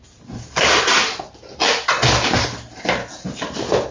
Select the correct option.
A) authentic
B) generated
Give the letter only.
A